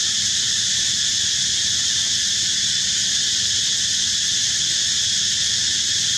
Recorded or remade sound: recorded